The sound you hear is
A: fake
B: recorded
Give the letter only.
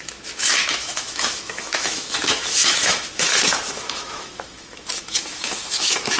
A